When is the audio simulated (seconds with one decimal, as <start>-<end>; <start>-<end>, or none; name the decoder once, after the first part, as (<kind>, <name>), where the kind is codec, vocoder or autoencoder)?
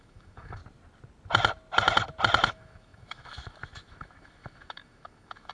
0.0-0.6 (autoencoder, DAC-VAE); 2.5-5.5